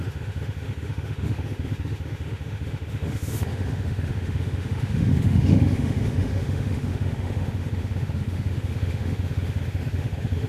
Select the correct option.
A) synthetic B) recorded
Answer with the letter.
A